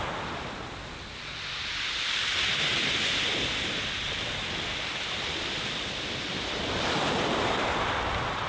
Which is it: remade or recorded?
recorded